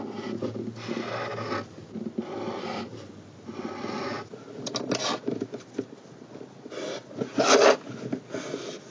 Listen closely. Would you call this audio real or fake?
real